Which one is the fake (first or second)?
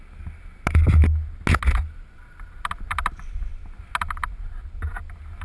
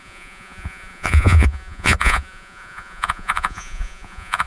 second